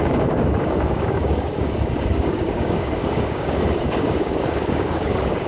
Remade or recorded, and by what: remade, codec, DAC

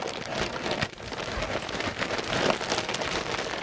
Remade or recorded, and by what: recorded